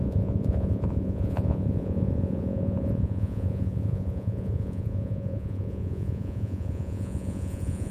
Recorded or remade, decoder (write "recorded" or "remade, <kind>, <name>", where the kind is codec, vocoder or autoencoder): remade, vocoder, Vocos